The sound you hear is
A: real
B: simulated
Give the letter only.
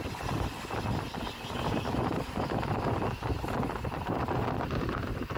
A